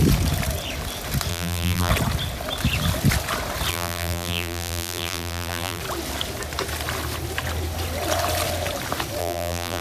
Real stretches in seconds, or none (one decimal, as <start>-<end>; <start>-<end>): 0.0-1.3; 1.9-3.7; 5.8-9.2